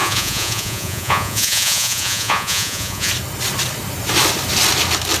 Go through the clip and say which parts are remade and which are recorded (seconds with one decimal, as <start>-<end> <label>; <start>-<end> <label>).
0.0-3.1 remade; 3.1-5.2 recorded